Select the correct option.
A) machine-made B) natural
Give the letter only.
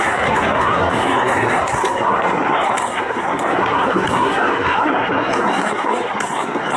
A